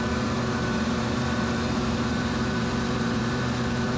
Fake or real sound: fake